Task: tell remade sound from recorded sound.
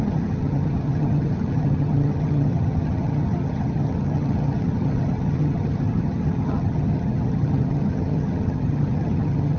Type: remade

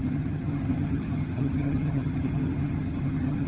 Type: remade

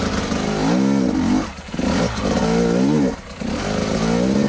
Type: recorded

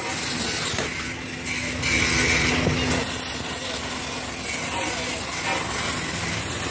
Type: recorded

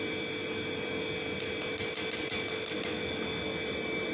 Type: recorded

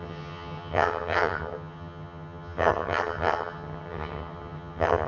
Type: remade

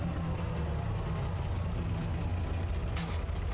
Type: recorded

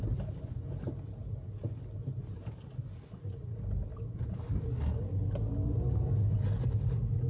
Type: recorded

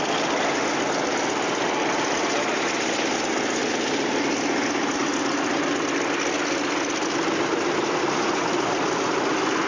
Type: recorded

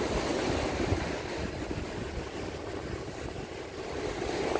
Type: recorded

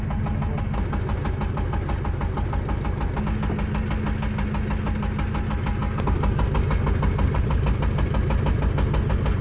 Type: recorded